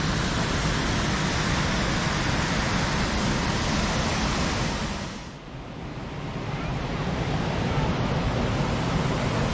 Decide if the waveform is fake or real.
real